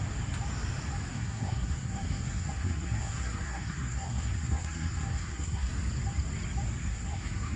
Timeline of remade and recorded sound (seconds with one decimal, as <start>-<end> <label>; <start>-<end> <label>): 0.0-1.1 recorded; 1.1-5.7 remade; 5.7-6.8 recorded; 6.8-7.6 remade

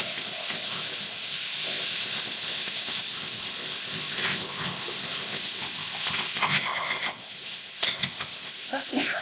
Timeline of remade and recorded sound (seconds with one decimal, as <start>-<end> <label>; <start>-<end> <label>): 0.0-9.2 remade

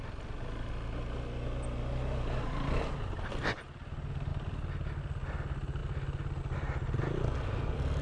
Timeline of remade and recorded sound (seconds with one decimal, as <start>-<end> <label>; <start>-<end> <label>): 0.0-8.0 recorded